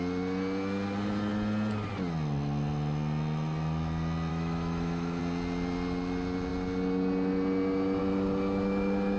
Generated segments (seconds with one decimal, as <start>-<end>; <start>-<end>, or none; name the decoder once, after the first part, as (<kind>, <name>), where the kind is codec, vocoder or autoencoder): 4.3-5.2 (autoencoder, DAC-VAE)